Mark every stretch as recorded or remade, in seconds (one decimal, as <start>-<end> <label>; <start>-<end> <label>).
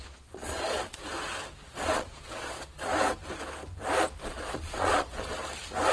0.0-1.0 remade; 1.0-1.7 recorded; 1.7-2.9 remade; 2.9-4.2 recorded; 4.2-5.3 remade; 5.3-5.9 recorded